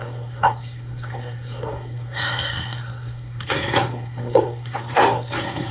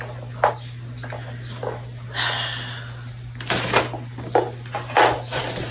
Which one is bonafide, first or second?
second